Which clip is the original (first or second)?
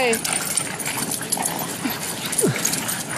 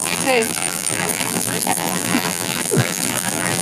first